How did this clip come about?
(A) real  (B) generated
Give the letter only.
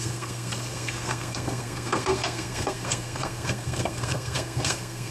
B